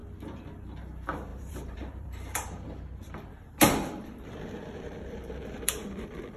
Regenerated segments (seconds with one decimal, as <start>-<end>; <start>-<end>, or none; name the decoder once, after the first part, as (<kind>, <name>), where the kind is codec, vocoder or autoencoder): 0.8-6.4 (vocoder, BigVGAN v2)